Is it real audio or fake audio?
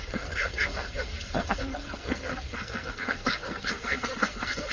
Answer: fake